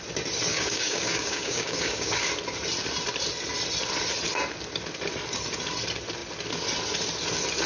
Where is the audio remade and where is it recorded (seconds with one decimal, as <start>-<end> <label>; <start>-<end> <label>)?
0.0-0.5 recorded; 0.5-2.3 remade; 2.3-7.7 recorded

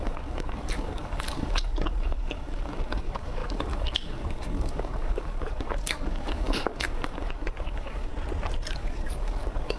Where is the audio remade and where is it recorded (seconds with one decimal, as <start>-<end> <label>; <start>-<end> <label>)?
0.0-8.1 remade; 8.1-8.7 recorded; 8.7-9.8 remade